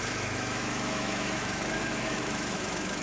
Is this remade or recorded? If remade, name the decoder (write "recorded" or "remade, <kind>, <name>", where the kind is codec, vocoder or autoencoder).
remade, autoencoder, DAC-VAE